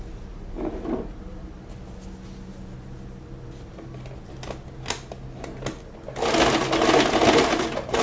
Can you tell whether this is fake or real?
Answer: real